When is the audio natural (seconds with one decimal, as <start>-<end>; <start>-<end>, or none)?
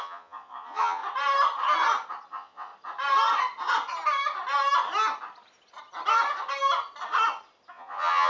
1.0-2.3; 2.7-7.7